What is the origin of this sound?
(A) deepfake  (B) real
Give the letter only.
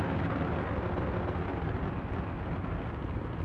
B